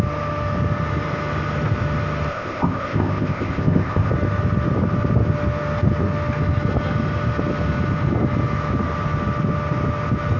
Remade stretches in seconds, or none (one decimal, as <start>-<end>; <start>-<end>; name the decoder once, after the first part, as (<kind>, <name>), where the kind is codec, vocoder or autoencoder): 2.3-4.1 (codec, ZipCodec)